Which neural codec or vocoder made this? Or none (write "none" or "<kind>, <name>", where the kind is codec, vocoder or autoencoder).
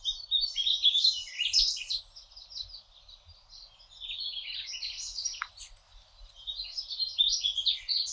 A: none